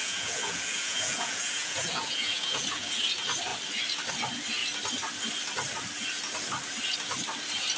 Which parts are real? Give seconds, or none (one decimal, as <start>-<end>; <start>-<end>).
3.0-7.8